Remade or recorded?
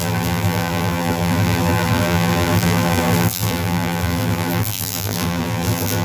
remade